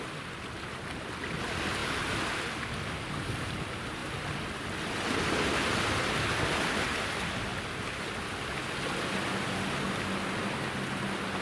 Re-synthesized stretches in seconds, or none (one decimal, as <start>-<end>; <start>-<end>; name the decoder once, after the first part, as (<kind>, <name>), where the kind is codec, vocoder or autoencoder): none